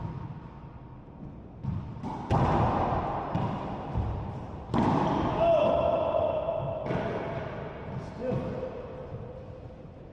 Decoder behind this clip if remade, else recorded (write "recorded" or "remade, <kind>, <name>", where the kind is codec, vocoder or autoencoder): recorded